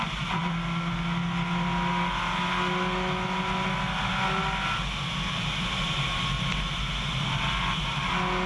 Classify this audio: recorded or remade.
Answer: recorded